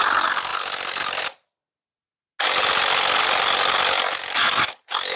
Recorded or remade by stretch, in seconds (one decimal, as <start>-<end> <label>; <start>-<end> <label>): 0.0-5.2 recorded